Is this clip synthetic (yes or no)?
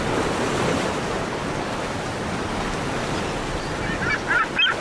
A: no